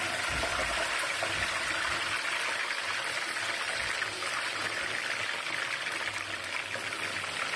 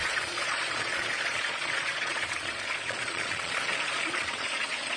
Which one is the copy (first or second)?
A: second